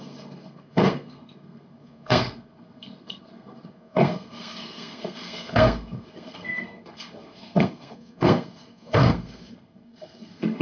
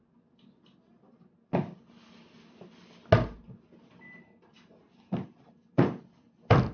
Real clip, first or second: second